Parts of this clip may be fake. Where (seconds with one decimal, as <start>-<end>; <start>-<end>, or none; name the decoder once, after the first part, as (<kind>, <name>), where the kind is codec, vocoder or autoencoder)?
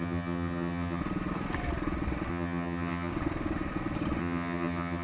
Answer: 0.0-1.0 (vocoder, HiFi-GAN); 2.3-3.1; 4.2-5.0